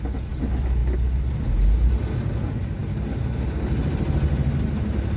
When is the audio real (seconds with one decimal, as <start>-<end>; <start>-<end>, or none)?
0.0-5.2